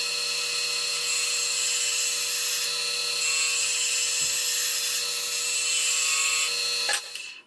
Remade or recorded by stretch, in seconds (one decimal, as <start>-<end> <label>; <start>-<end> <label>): 0.0-7.5 recorded